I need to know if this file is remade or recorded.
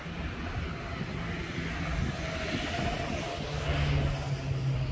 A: recorded